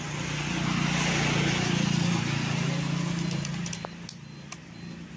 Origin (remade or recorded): recorded